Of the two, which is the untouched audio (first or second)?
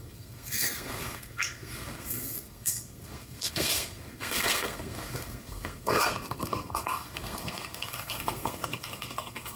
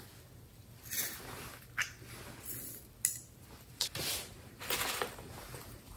second